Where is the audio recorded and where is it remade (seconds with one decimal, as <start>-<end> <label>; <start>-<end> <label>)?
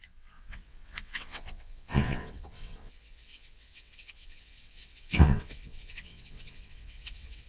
0.0-7.5 remade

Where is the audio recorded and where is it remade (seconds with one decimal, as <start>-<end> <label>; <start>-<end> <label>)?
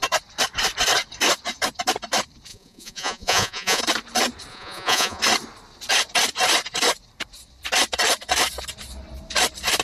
0.0-2.5 recorded; 2.5-3.8 remade; 3.8-4.5 recorded; 4.5-5.2 remade; 5.2-9.8 recorded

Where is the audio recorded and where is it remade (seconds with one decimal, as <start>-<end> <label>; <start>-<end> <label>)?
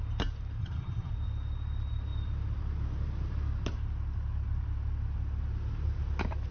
0.0-0.6 recorded; 0.6-1.1 remade; 1.1-6.5 recorded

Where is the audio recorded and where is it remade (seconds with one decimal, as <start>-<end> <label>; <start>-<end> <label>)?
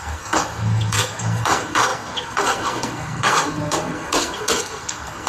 0.0-5.3 remade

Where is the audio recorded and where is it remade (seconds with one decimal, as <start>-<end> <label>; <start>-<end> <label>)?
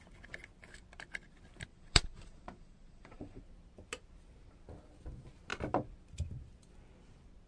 0.0-1.7 recorded; 1.7-3.4 remade; 3.4-7.5 recorded